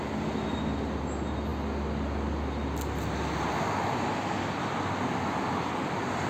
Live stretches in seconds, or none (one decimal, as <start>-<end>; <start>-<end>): 0.0-6.3